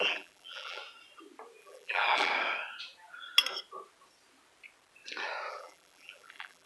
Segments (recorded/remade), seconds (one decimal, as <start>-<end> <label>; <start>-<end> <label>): 0.0-0.8 remade; 0.8-1.6 recorded; 1.6-2.3 remade; 2.3-5.5 recorded; 5.5-6.7 remade